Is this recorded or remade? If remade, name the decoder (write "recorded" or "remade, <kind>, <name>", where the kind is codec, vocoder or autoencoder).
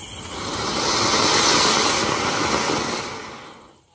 recorded